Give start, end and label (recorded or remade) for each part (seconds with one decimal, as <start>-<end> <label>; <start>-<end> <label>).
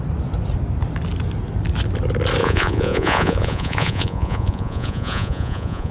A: 0.0-2.4 recorded; 2.4-5.9 remade